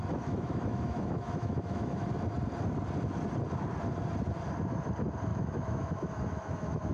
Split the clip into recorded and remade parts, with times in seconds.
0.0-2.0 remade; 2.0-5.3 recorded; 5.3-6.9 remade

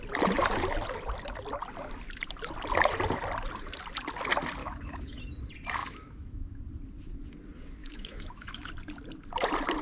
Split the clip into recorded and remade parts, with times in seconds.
0.0-4.6 recorded; 4.6-5.2 remade; 5.2-5.8 recorded; 5.8-6.6 remade; 6.6-7.8 recorded; 7.8-8.7 remade; 8.7-9.8 recorded

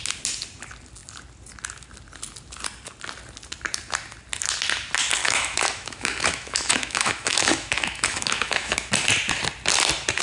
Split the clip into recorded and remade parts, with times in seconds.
0.0-5.2 recorded; 5.2-8.9 remade; 8.9-10.2 recorded

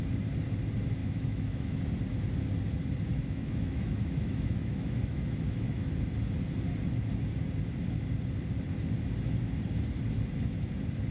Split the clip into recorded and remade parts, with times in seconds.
0.0-1.0 recorded; 1.0-1.8 remade; 1.8-3.1 recorded; 3.1-5.9 remade; 5.9-11.1 recorded

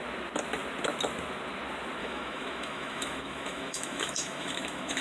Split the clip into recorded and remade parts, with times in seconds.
0.0-2.0 recorded; 2.0-5.0 remade

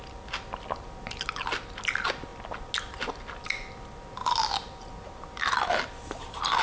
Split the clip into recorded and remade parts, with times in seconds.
0.0-6.6 recorded